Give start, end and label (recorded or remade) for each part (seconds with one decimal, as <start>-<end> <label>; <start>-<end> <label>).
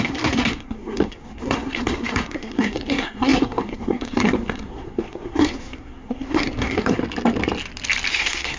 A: 0.0-7.0 remade; 7.0-8.1 recorded; 8.1-8.6 remade